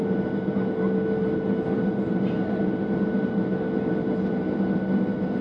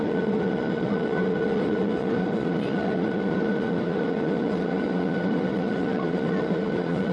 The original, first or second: first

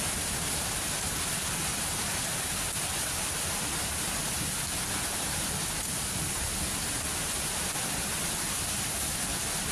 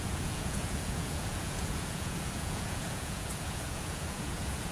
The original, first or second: first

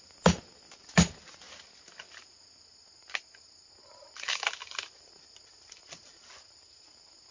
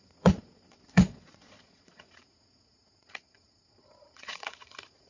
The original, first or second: first